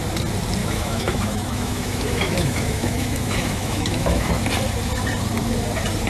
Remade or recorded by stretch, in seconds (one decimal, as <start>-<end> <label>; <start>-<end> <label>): 0.0-0.6 recorded; 0.6-4.3 remade; 4.3-6.1 recorded